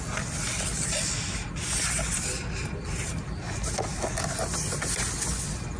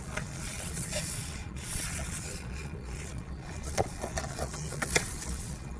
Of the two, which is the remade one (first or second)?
second